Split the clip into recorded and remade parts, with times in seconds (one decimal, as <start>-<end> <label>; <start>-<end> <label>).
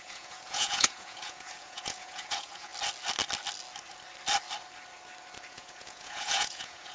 0.0-2.7 remade; 2.7-5.5 recorded; 5.5-6.9 remade